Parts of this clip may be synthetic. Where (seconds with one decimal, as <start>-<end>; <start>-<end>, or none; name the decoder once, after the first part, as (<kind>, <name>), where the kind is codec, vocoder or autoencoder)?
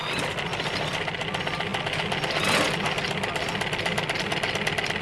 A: none